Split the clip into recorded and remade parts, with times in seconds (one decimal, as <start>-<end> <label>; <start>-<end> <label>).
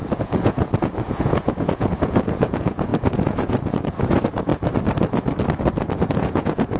0.0-4.5 remade; 4.5-6.1 recorded; 6.1-6.8 remade